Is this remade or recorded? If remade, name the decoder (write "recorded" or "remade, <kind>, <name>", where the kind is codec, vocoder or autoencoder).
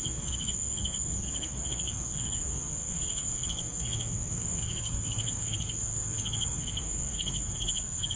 remade, codec, SNAC